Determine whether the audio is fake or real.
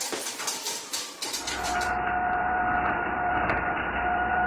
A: fake